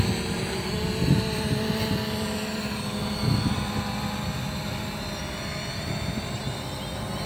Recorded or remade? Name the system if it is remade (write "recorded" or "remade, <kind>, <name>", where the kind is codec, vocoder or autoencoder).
recorded